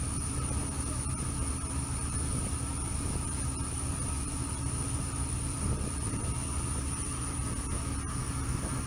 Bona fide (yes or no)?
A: yes